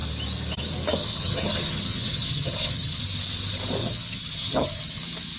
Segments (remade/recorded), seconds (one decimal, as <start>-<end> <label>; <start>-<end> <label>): 0.0-1.0 recorded; 1.0-3.0 remade; 3.0-3.8 recorded; 3.8-5.0 remade; 5.0-5.4 recorded